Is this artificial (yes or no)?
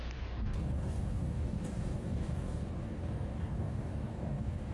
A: yes